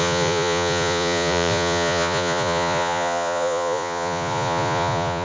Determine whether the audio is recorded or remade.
remade